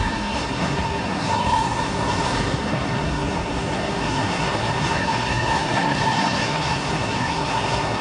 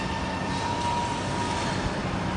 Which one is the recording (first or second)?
second